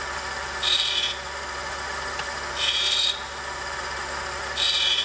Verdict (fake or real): real